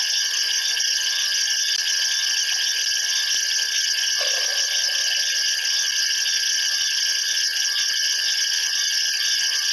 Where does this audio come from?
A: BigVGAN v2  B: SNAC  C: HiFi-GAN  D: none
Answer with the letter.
D